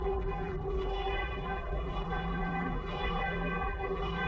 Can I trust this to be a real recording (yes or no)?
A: no